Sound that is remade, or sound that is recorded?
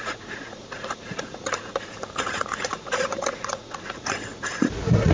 remade